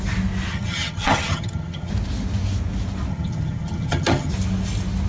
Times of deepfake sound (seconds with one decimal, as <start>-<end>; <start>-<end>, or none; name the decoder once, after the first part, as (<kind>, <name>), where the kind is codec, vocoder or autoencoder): 0.5-1.9 (vocoder, HiFi-GAN); 3.1-4.3